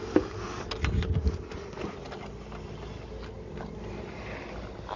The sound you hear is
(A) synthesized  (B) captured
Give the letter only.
B